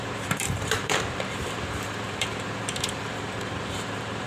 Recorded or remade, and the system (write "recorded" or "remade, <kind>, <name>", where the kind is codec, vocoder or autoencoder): remade, vocoder, BigVGAN v2